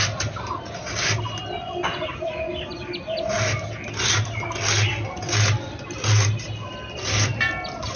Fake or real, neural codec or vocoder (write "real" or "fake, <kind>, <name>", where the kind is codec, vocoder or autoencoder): real